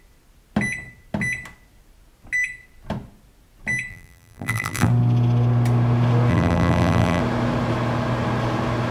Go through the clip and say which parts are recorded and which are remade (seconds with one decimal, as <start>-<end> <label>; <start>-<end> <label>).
0.0-3.9 recorded; 3.9-4.9 remade; 4.9-6.3 recorded; 6.3-7.2 remade; 7.2-8.9 recorded